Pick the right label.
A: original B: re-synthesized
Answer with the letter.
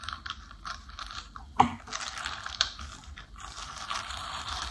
B